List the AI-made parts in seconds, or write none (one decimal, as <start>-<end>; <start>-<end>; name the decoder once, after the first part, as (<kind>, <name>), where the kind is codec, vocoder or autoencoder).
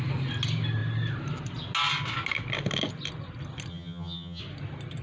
3.7-4.4 (vocoder, HiFi-GAN)